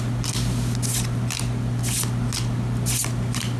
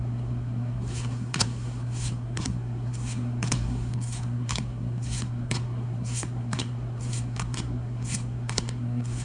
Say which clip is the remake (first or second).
second